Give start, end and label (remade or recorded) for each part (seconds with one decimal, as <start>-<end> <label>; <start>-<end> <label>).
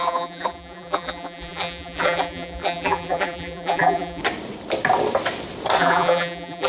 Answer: 0.0-4.2 remade; 4.2-5.8 recorded; 5.8-6.7 remade